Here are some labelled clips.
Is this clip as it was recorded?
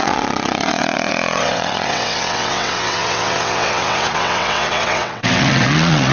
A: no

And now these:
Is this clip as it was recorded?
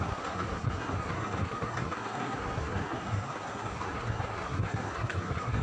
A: no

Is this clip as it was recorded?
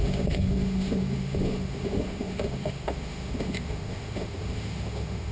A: no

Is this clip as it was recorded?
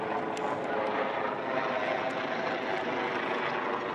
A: yes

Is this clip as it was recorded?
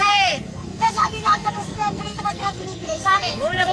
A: no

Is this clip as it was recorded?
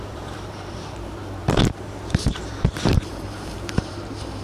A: no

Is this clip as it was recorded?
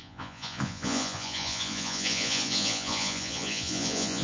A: no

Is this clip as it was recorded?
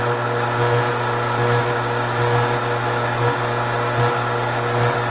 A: yes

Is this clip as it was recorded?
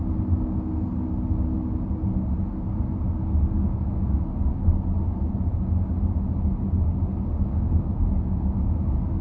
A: yes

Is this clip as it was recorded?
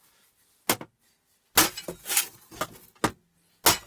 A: yes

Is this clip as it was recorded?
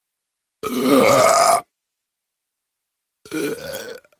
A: yes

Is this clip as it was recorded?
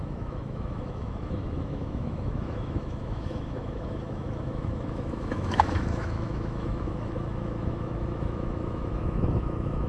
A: no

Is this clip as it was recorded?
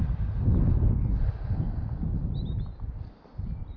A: yes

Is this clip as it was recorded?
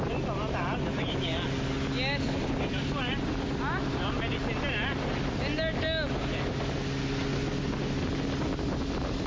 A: yes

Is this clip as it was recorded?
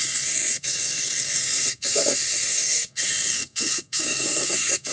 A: no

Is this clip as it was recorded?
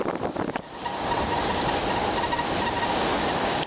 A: yes